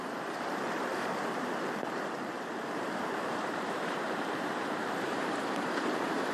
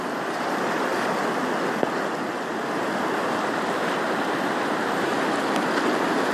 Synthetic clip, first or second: first